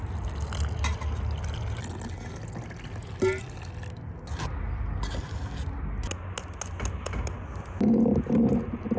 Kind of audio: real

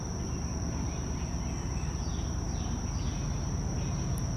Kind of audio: real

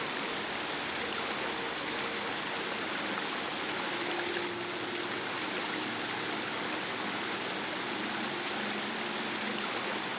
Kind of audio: real